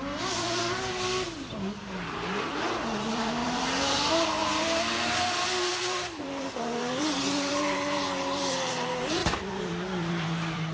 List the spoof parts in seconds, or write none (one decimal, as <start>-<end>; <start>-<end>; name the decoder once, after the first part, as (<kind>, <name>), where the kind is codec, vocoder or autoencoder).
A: 0.0-10.7 (vocoder, BigVGAN v2)